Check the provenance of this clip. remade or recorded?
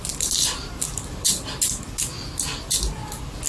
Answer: recorded